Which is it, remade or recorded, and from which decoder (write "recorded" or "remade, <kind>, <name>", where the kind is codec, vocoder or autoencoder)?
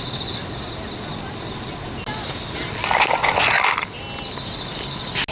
recorded